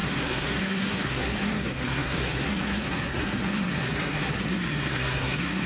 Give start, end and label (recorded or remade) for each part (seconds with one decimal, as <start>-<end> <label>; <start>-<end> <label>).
0.0-5.7 remade